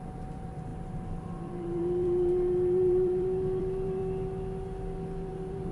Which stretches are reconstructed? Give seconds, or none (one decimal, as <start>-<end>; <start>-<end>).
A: 0.0-4.0; 5.3-5.7